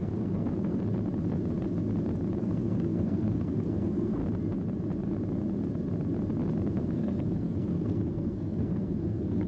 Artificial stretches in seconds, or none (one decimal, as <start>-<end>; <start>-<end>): 0.0-0.8; 2.4-4.2; 6.7-9.5